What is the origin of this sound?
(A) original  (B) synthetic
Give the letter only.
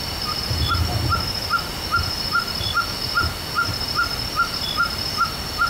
A